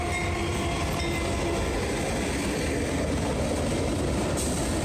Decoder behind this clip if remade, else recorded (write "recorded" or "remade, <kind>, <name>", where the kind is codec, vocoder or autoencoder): recorded